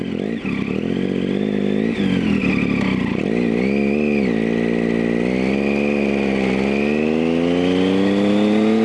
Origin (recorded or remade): recorded